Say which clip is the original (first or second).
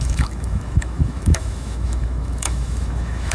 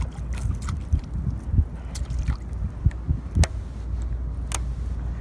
second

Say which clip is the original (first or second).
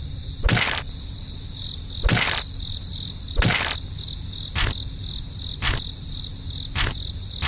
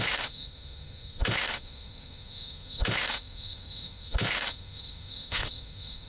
first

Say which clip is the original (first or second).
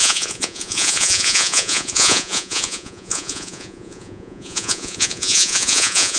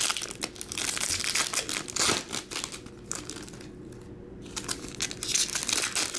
second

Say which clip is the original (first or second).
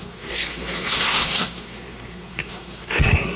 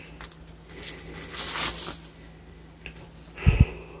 second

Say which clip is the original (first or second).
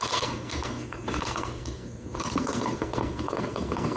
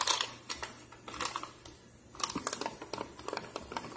second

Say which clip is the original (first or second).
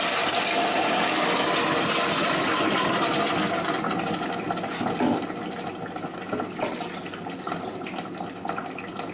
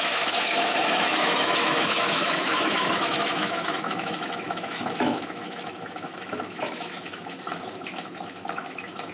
first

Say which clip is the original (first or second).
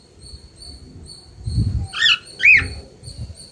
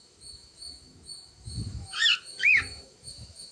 first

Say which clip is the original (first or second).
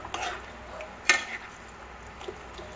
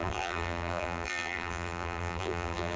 first